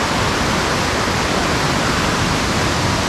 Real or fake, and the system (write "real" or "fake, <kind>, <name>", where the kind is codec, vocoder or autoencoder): real